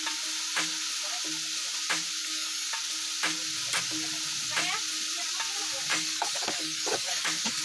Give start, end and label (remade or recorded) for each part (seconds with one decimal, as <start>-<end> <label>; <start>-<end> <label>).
0.0-2.2 recorded; 2.2-2.7 remade; 2.7-5.9 recorded; 5.9-7.6 remade

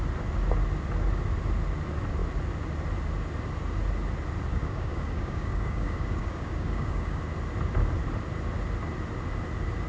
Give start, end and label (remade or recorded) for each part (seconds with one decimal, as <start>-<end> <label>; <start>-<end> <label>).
0.0-4.5 recorded; 4.5-7.2 remade; 7.2-9.9 recorded

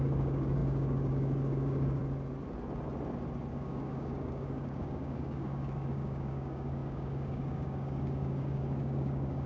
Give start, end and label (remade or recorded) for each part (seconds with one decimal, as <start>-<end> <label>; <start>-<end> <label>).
0.0-2.0 remade; 2.0-3.5 recorded; 3.5-9.5 remade

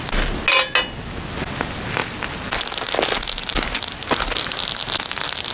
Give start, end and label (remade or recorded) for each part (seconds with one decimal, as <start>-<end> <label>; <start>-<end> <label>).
0.0-5.5 recorded

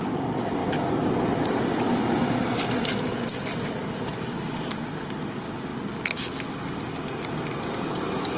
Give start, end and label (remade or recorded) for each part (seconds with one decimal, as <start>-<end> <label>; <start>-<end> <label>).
0.0-8.4 recorded

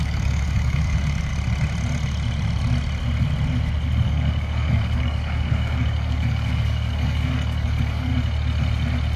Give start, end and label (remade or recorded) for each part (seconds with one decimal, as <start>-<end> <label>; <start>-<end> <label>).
0.0-1.3 remade; 1.3-4.1 recorded; 4.1-8.1 remade; 8.1-9.2 recorded